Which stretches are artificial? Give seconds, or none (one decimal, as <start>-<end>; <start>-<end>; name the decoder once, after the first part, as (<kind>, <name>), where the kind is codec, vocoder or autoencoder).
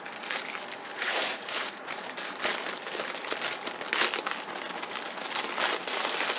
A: 0.9-2.0 (vocoder, Vocos)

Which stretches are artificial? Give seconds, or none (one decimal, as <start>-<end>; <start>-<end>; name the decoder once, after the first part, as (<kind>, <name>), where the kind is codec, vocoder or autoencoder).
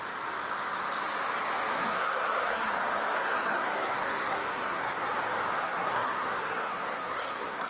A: 1.7-2.7 (codec, SNAC); 3.2-4.9; 5.6-7.7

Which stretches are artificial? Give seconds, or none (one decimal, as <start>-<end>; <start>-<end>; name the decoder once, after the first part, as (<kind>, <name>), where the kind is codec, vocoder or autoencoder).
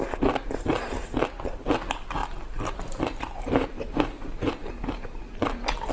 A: 2.2-4.7 (vocoder, BigVGAN v2)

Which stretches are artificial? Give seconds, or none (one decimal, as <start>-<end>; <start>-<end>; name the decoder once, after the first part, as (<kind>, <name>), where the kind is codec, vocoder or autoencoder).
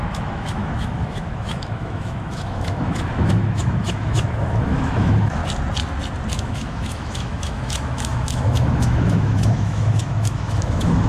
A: 0.0-5.4 (autoencoder, DAC-VAE); 6.3-11.1